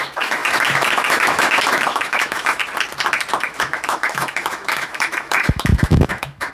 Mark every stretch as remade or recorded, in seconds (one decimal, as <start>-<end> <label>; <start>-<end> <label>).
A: 0.0-2.6 remade; 2.6-3.4 recorded; 3.4-6.5 remade